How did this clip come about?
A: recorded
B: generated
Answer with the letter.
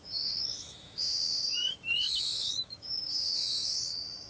B